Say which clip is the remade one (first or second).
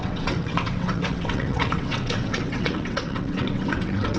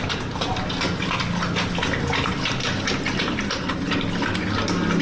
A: first